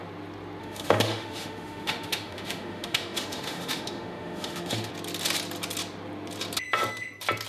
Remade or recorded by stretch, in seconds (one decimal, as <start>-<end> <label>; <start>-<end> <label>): 0.0-0.6 recorded; 0.6-4.9 remade; 4.9-7.5 recorded